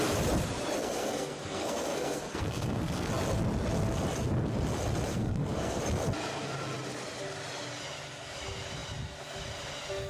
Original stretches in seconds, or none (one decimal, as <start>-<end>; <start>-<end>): 0.0-0.8; 3.1-5.1; 5.8-10.1